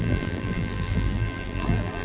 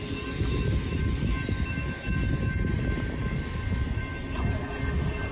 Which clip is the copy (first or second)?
first